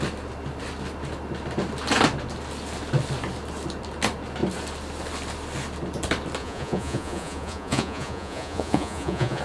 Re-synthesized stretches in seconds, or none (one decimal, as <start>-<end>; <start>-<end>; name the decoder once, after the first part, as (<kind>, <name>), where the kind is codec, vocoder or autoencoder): 6.4-9.4 (vocoder, Vocos)